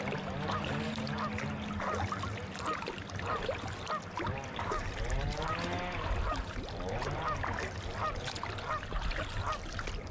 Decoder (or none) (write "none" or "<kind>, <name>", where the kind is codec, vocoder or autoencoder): none